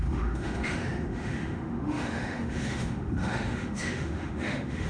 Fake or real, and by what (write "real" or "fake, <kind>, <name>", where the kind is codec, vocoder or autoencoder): fake, autoencoder, DAC-VAE